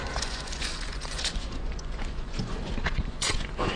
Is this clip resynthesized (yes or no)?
yes